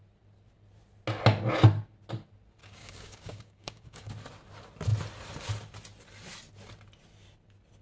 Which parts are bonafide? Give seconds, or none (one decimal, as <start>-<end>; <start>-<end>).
0.0-2.6; 4.1-7.8